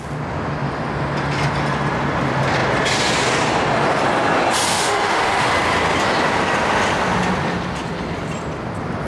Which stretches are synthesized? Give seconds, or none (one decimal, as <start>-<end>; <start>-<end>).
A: 4.7-5.5